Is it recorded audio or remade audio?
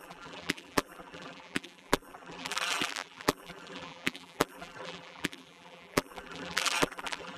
remade